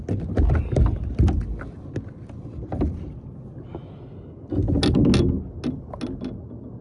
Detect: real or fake real